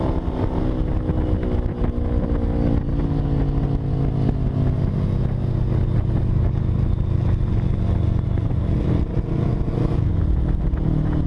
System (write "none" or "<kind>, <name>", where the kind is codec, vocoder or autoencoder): none